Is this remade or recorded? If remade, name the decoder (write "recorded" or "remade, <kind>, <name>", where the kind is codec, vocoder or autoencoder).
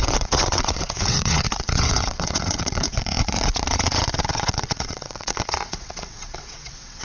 remade, vocoder, WaveNeXt